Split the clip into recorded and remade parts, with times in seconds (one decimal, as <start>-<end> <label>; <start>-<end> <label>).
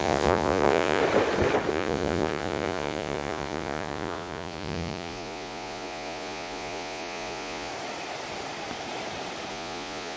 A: 0.0-1.0 remade; 1.0-1.7 recorded; 1.7-7.7 remade; 7.7-9.5 recorded; 9.5-10.2 remade